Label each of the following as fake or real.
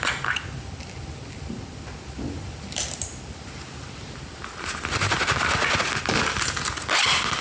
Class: real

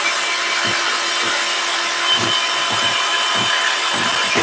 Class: real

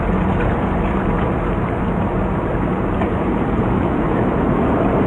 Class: fake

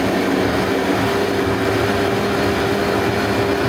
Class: real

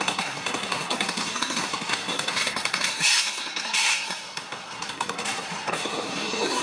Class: fake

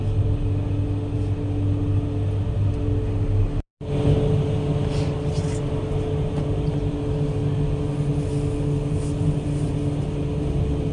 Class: real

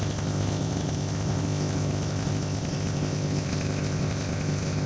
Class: fake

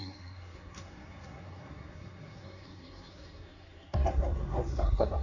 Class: fake